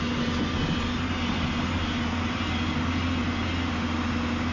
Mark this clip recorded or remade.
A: recorded